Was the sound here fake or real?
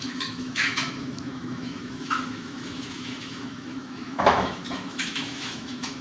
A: fake